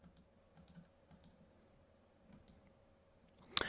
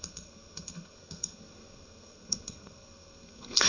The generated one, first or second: second